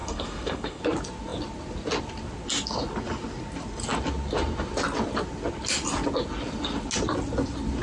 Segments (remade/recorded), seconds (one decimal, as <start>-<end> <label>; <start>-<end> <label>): 0.0-0.8 remade; 0.8-7.8 recorded